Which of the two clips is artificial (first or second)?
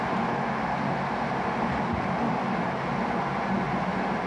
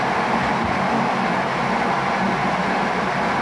first